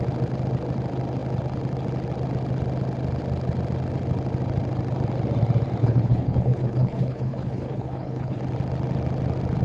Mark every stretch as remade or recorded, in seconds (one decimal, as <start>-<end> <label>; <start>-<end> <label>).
0.0-5.8 recorded; 5.8-8.4 remade; 8.4-9.6 recorded